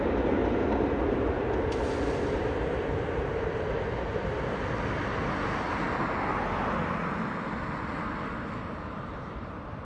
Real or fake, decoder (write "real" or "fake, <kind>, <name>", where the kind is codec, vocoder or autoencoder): real